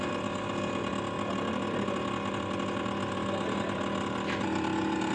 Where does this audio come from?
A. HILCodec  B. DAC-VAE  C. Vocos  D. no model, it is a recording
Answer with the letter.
D